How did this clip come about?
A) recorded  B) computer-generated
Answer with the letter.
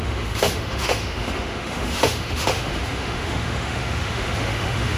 B